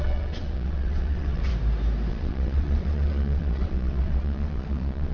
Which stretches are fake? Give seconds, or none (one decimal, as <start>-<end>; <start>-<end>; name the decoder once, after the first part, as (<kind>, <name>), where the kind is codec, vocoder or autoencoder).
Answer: 0.0-1.5 (vocoder, WaveNeXt); 2.1-5.1